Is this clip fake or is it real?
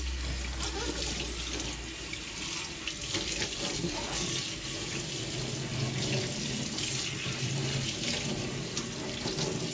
real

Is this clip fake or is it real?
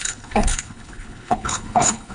fake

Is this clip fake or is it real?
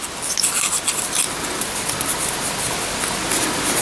real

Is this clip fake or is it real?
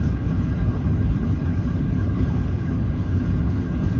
fake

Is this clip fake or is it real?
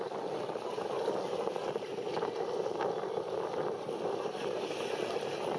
real